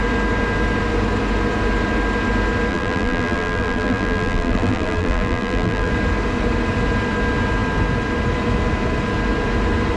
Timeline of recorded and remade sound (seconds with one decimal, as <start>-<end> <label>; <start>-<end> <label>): 0.0-2.7 recorded; 2.7-5.9 remade; 5.9-10.0 recorded